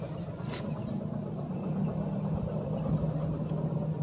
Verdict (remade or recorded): recorded